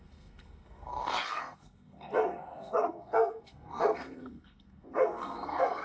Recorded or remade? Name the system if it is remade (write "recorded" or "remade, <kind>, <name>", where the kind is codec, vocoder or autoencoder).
remade, codec, SNAC